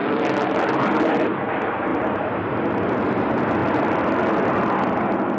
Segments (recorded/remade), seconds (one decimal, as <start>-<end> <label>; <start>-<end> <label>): 0.0-1.9 recorded; 1.9-2.9 remade; 2.9-3.6 recorded; 3.6-4.6 remade; 4.6-5.4 recorded